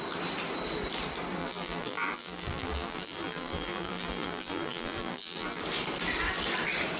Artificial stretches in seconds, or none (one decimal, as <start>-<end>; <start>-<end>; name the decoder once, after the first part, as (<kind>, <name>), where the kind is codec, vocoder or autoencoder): 1.4-5.6 (vocoder, BigVGAN v2)